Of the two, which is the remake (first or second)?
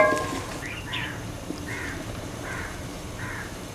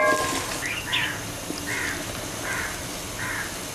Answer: first